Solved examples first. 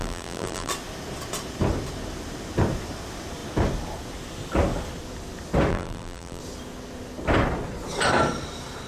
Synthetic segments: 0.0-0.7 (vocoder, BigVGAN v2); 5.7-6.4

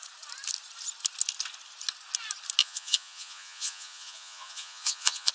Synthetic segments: 2.6-5.3 (vocoder, Vocos)

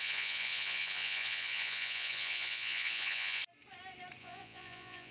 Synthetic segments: 0.0-3.4 (vocoder, Vocos); 4.2-5.1